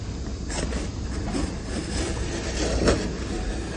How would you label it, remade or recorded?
recorded